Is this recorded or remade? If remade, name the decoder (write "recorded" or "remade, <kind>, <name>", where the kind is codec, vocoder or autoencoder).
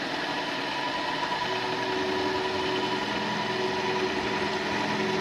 recorded